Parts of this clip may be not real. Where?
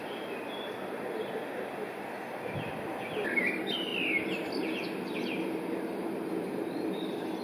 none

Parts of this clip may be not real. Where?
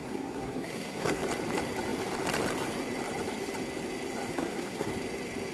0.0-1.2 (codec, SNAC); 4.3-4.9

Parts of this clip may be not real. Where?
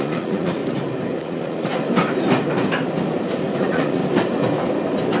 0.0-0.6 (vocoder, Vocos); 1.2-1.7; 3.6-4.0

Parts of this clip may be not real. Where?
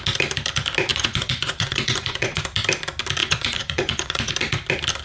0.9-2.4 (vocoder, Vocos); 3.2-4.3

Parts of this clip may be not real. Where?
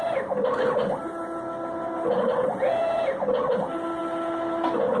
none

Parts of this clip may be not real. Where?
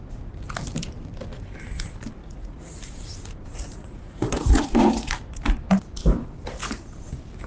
2.2-2.8 (vocoder, Vocos); 3.5-5.2; 6.6-7.1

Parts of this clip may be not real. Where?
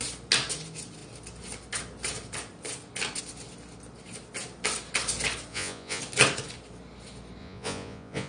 5.5-6.0 (vocoder, Vocos); 7.4-8.3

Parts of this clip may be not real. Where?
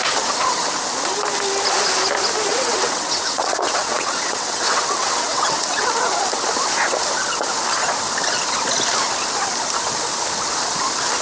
2.5-5.9 (vocoder, WaveNeXt)